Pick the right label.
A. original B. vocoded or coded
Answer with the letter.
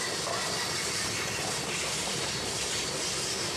A